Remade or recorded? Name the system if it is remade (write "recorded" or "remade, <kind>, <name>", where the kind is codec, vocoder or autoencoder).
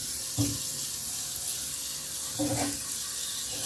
recorded